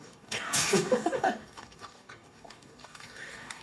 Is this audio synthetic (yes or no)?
yes